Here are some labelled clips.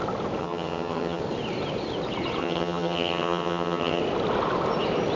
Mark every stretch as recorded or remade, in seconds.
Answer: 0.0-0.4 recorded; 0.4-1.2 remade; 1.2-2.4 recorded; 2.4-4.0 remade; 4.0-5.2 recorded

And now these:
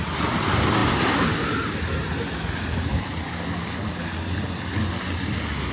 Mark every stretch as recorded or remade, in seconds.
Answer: 0.0-5.7 recorded